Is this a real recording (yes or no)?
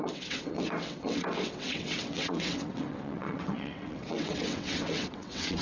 no